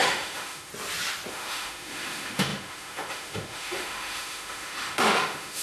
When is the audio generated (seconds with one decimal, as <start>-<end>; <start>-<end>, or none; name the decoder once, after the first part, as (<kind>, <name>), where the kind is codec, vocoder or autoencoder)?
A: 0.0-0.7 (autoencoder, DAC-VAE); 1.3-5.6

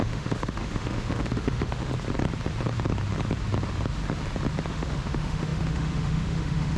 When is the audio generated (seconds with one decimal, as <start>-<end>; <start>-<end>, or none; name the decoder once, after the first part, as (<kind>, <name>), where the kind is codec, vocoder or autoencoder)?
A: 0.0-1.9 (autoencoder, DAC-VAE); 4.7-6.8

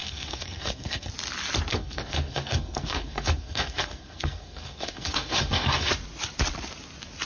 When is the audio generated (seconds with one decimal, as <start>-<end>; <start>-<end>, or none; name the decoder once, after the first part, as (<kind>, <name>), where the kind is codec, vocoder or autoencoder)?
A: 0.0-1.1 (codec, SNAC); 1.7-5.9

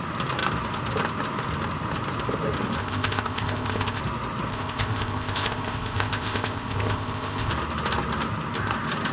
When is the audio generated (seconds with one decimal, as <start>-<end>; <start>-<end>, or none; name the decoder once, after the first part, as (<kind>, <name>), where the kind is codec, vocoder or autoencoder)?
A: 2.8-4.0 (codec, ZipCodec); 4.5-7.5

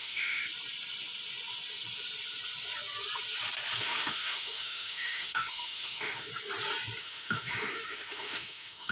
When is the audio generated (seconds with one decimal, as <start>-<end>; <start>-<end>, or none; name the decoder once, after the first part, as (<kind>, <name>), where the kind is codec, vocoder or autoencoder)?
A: 0.0-0.4 (autoencoder, DAC-VAE); 3.8-6.3; 7.0-8.9

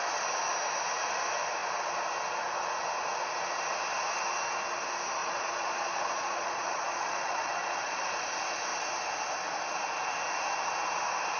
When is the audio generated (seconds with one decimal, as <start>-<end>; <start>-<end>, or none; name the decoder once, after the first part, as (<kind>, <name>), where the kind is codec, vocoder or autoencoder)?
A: 5.2-8.1 (vocoder, Vocos)